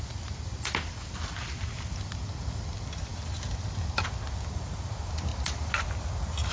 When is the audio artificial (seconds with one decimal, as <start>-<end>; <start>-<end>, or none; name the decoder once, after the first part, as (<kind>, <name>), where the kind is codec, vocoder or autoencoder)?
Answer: none